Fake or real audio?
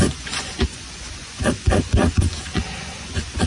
fake